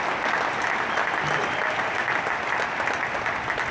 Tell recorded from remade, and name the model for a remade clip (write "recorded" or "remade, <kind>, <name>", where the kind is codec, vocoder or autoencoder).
recorded